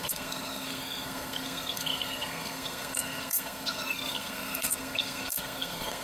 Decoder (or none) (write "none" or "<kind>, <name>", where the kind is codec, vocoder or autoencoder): codec, SNAC